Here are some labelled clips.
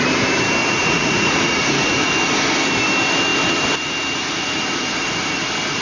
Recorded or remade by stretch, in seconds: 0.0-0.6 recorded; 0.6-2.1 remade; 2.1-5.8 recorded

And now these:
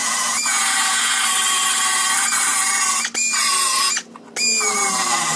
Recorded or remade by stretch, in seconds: 0.0-1.2 remade; 1.2-5.4 recorded